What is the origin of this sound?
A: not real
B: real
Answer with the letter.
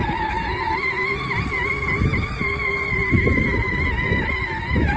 B